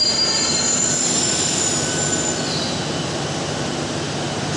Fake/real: real